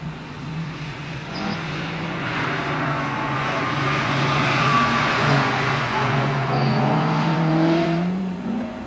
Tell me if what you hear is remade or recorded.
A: remade